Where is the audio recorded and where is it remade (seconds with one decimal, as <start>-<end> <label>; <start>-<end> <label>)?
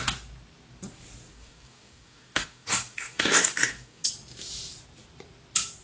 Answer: 0.0-1.3 recorded; 1.3-4.1 remade; 4.1-5.8 recorded